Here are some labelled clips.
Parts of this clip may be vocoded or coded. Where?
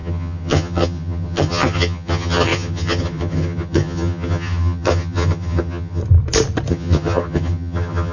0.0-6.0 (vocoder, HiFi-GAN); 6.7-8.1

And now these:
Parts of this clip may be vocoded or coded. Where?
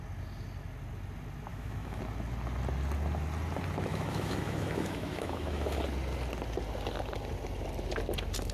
1.5-2.0 (autoencoder, DAC-VAE); 3.9-5.8